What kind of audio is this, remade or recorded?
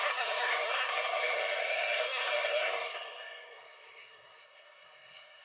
remade